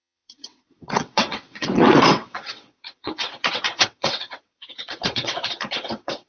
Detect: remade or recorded remade